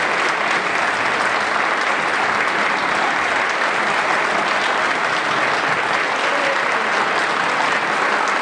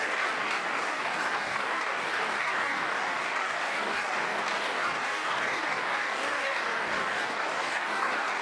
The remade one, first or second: second